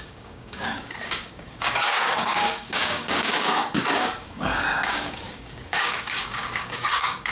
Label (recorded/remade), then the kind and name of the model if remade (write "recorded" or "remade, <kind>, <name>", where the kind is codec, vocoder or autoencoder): remade, codec, DAC